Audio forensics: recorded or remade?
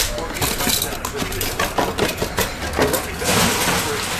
recorded